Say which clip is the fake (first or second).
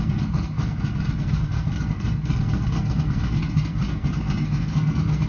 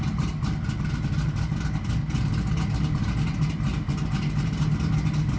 first